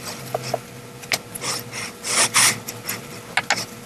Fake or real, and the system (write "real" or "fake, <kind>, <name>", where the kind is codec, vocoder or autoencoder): real